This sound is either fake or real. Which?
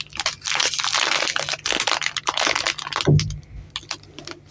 real